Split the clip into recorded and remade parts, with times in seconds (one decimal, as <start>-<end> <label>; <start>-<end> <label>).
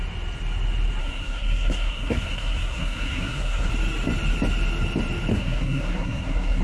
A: 0.0-1.0 recorded; 1.0-3.7 remade; 3.7-5.3 recorded; 5.3-6.6 remade